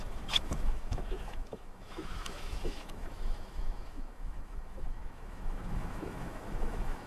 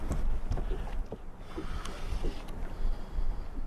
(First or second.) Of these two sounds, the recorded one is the second